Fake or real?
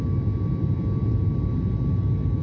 real